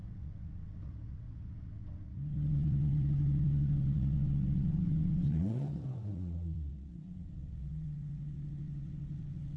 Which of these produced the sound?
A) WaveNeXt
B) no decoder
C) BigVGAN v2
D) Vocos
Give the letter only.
A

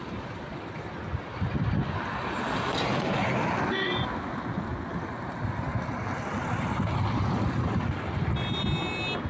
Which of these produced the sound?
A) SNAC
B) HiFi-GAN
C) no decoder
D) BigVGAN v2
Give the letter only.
C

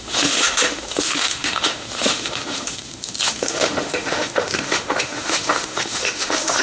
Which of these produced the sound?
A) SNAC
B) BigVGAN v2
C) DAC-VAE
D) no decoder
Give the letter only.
C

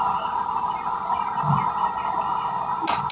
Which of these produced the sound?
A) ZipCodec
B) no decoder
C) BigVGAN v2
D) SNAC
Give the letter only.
B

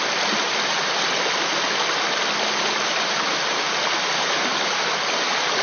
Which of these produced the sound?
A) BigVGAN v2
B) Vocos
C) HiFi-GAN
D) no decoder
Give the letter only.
D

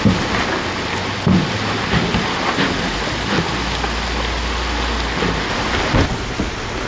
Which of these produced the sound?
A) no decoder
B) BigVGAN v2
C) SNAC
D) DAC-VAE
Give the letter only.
A